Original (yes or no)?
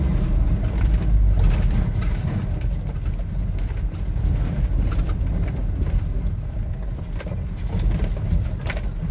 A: yes